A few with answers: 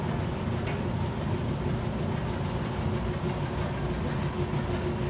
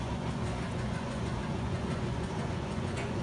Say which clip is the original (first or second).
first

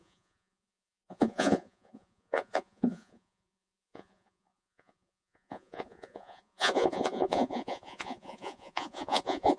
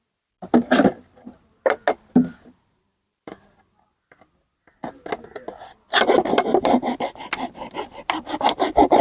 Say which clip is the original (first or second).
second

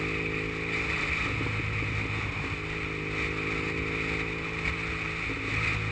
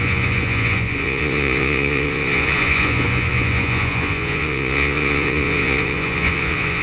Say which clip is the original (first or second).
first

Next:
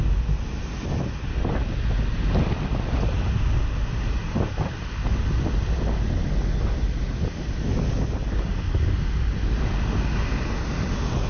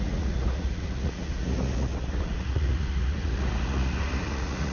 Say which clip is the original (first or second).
first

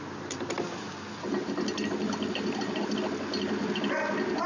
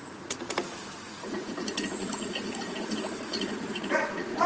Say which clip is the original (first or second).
first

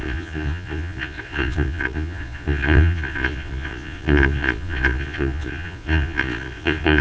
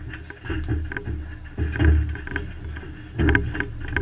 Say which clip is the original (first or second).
second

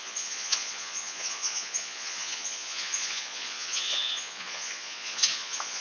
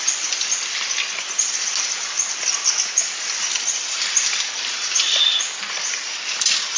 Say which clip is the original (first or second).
second